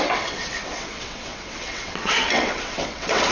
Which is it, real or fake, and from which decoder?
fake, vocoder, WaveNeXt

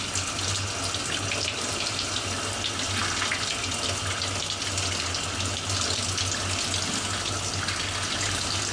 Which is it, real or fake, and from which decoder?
real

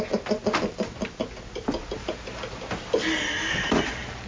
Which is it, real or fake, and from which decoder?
real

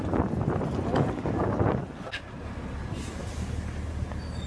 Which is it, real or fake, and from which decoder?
real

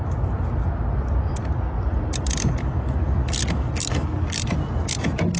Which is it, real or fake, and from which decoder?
real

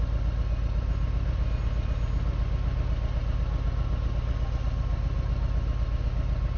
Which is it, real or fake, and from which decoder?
real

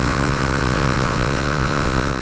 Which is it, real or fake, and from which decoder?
fake, vocoder, WaveNeXt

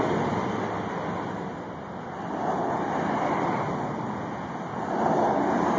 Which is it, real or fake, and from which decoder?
real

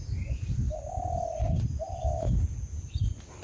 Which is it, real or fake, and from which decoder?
real